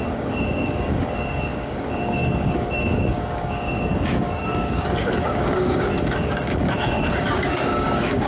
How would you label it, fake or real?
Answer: fake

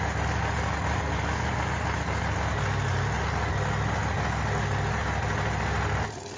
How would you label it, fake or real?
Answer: real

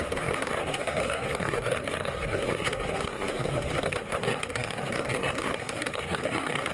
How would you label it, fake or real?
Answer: fake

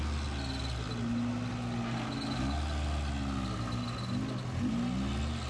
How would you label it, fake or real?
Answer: real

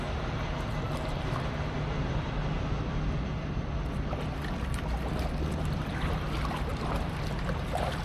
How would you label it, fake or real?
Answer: real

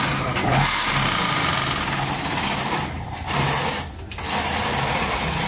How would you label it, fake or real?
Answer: real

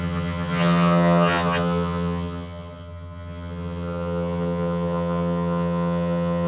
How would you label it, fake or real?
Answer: fake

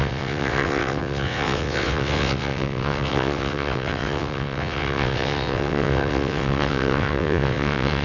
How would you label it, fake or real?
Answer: fake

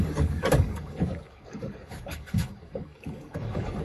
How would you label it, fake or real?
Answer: fake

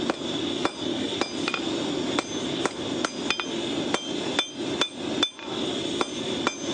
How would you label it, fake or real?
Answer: real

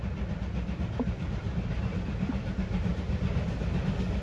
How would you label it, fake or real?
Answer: real